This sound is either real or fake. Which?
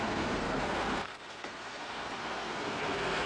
fake